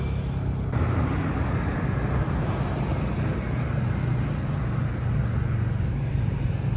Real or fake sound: real